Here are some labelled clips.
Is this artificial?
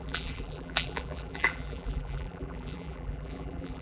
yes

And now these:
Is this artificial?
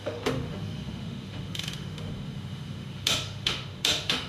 yes